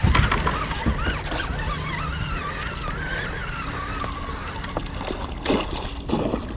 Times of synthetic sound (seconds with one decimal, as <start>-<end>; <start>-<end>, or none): none